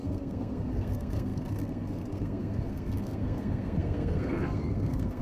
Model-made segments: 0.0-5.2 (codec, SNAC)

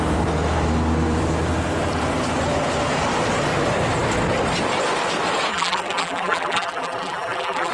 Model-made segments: 5.5-7.7 (vocoder, BigVGAN v2)

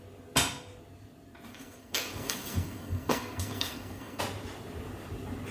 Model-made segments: 1.5-4.2 (codec, SNAC)

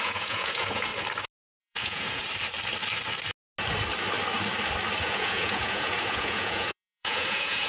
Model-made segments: 0.0-0.9 (vocoder, Vocos); 1.6-2.2; 5.0-7.7

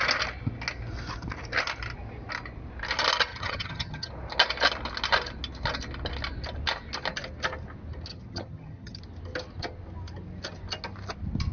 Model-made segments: 3.3-4.1 (vocoder, HiFi-GAN); 8.1-9.0

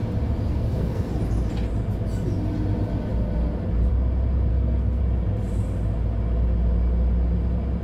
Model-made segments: 0.5-1.1 (codec, SNAC); 4.5-5.0

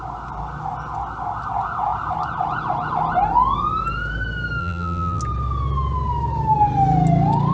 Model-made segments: 4.6-5.2 (vocoder, BigVGAN v2)

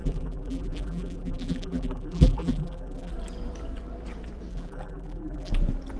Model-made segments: 0.0-3.1 (vocoder, BigVGAN v2); 4.5-5.5